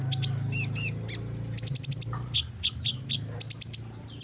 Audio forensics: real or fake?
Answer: real